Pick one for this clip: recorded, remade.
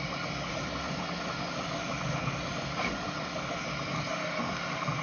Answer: recorded